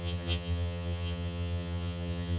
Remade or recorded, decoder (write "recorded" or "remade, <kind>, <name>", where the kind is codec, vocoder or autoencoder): remade, vocoder, HiFi-GAN